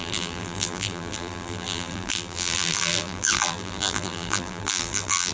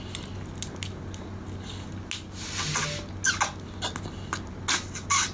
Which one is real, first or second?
second